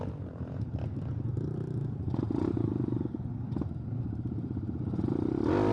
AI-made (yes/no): no